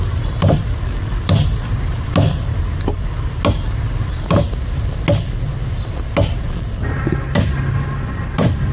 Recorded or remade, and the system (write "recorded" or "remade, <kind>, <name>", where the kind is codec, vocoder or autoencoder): recorded